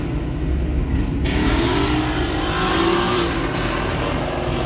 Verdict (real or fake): real